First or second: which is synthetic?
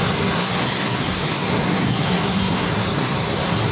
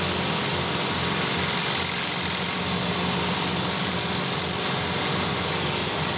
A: first